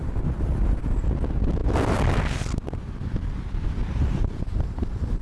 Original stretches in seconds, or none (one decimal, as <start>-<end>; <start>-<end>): 0.6-3.8; 4.6-5.2